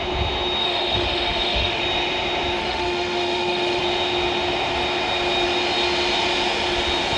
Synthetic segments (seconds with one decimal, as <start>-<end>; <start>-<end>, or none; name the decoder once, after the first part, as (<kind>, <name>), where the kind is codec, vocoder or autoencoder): 0.6-1.8 (autoencoder, DAC-VAE); 2.6-3.8